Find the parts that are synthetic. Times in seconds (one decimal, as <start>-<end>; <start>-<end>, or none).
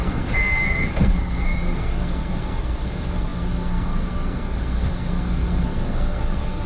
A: 0.0-6.7